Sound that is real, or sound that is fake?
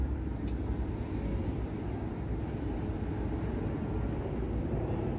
real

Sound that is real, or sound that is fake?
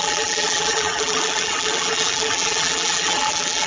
fake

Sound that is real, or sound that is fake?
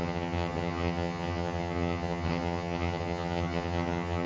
fake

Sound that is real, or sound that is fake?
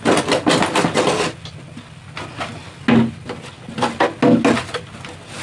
real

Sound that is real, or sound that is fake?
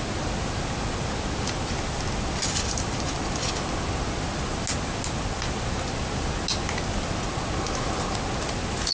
real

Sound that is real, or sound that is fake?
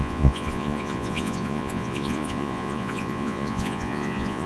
fake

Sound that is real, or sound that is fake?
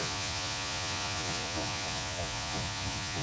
fake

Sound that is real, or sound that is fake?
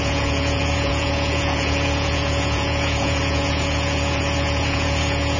fake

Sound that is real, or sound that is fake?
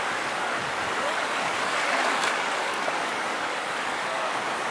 fake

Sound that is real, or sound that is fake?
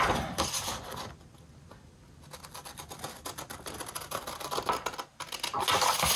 real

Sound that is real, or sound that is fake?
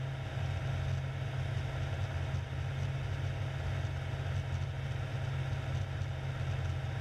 real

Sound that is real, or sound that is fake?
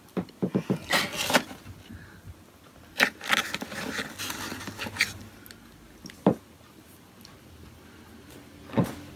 real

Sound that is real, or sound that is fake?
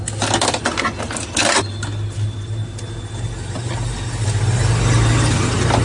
real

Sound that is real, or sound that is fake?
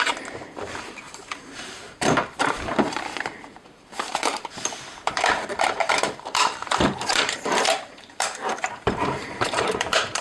fake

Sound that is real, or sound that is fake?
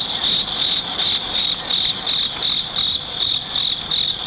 real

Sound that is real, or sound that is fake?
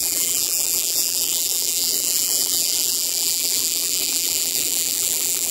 fake